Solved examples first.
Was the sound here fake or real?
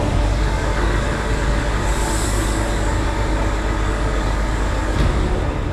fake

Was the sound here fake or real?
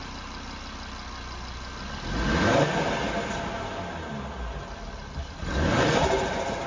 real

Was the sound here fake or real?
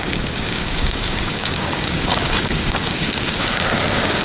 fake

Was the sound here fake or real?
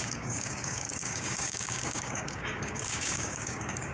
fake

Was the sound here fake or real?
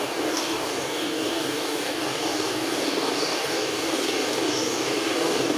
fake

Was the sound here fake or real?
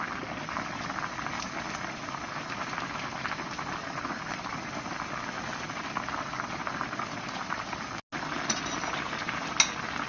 real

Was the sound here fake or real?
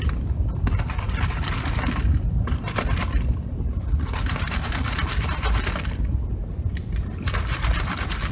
real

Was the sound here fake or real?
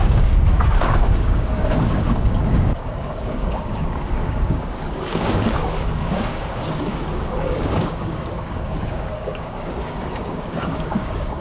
fake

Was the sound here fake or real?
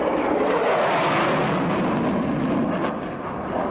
real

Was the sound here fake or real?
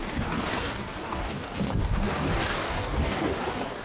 fake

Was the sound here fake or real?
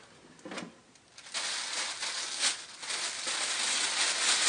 real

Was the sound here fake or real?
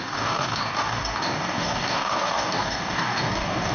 fake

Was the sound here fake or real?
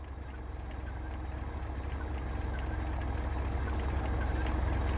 real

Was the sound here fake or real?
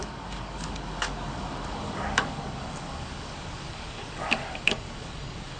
fake